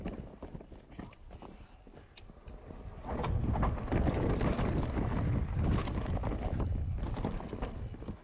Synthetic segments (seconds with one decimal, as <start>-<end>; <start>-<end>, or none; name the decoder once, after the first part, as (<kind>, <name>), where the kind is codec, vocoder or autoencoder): none